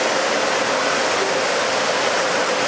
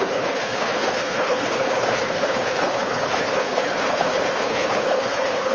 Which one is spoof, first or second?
second